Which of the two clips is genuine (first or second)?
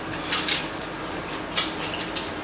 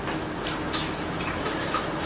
first